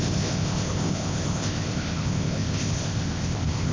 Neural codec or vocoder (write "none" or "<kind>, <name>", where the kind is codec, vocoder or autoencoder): codec, ZipCodec